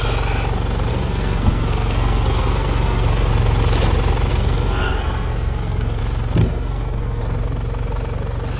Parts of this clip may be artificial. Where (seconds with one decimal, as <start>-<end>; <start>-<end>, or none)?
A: 0.9-3.3; 4.3-6.0; 6.4-7.2

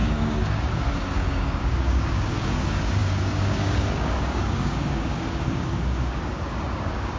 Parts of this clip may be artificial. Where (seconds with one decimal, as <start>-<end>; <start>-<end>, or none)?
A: 0.0-7.2

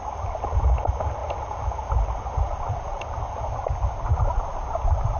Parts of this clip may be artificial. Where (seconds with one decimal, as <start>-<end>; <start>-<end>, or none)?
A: none

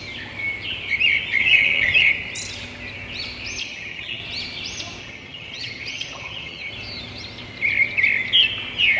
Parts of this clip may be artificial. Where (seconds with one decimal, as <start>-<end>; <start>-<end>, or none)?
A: 1.4-2.1; 3.6-4.2; 5.0-6.7

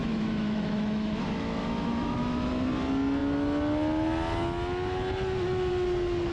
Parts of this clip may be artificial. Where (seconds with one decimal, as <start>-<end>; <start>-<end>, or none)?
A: 0.0-2.5

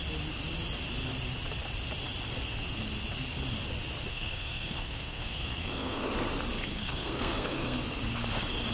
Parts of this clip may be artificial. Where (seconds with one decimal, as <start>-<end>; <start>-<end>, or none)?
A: 4.1-6.1; 6.7-7.8

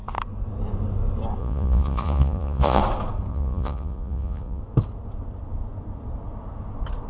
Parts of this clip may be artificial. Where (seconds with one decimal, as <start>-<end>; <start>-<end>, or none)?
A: 1.4-2.8; 3.3-4.6

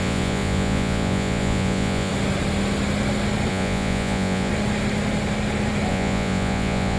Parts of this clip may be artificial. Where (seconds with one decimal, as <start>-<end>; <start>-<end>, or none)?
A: 0.0-2.1; 3.5-4.5; 5.9-7.0